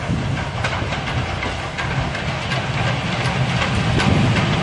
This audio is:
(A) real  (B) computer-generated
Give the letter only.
A